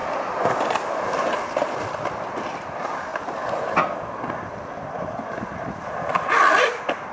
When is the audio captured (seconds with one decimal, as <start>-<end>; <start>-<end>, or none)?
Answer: 0.0-7.1